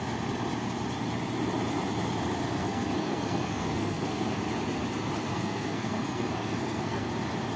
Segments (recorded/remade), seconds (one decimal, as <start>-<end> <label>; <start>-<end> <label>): 0.0-2.6 recorded; 2.6-4.4 remade; 4.4-5.3 recorded; 5.3-7.1 remade; 7.1-7.6 recorded

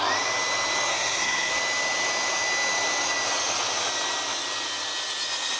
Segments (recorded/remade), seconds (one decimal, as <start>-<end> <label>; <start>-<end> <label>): 0.0-0.9 recorded; 0.9-1.5 remade; 1.5-5.6 recorded

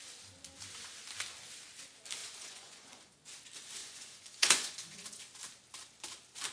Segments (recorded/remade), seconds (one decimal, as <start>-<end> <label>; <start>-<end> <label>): 0.0-2.2 recorded; 2.2-3.2 remade; 3.2-3.8 recorded; 3.8-5.2 remade; 5.2-6.5 recorded

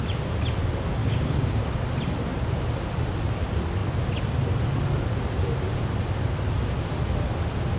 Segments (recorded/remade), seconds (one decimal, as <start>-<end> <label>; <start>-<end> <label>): 0.0-1.0 recorded; 1.0-1.8 remade; 1.8-7.8 recorded

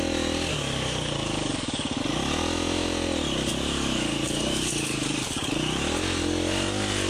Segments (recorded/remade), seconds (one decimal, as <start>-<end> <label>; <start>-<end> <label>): 0.0-0.5 recorded; 0.5-2.0 remade; 2.0-3.5 recorded; 3.5-5.5 remade; 5.5-7.1 recorded

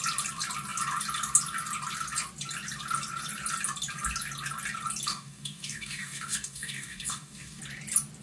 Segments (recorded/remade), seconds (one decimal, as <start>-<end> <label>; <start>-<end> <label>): 0.0-5.1 recorded; 5.1-7.6 remade; 7.6-8.2 recorded